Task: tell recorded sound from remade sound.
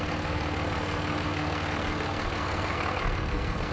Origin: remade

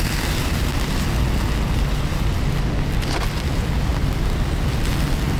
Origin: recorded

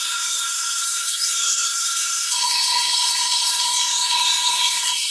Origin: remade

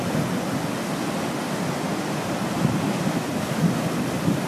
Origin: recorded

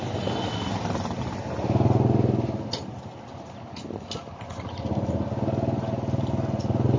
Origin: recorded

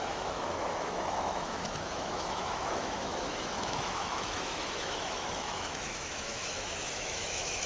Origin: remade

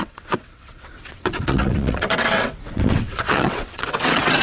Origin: remade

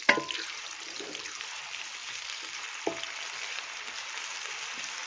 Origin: recorded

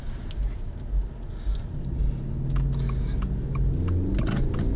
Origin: recorded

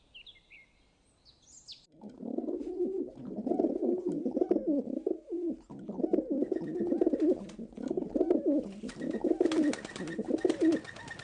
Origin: recorded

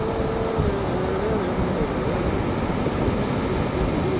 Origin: recorded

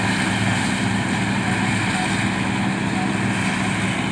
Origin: recorded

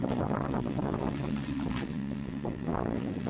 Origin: remade